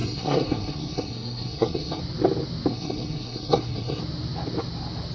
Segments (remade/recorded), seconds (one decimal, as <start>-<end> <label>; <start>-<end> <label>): 0.0-2.0 remade; 2.0-2.7 recorded; 2.7-4.0 remade; 4.0-5.1 recorded